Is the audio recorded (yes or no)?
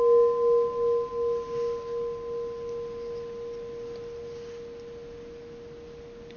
yes